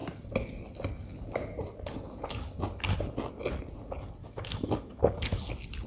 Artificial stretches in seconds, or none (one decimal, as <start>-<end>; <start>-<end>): 4.2-5.0